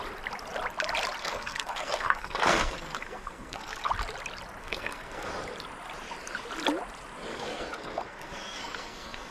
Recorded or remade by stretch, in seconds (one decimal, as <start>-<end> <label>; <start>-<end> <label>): 0.0-1.2 recorded; 1.2-3.9 remade; 3.9-4.6 recorded; 4.6-5.3 remade; 5.3-7.3 recorded; 7.3-9.3 remade